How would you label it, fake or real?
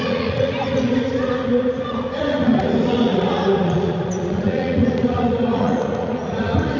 fake